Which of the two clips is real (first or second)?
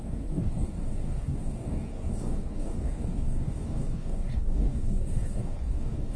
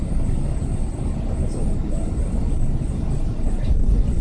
second